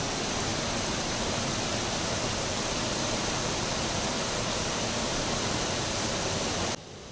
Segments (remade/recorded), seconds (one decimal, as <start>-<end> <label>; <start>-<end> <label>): 0.0-7.1 recorded